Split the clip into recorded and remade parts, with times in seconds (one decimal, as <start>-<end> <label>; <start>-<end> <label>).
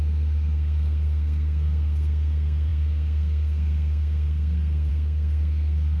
0.0-6.0 remade